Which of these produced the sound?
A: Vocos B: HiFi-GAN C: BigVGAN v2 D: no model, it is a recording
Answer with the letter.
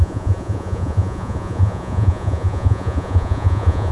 A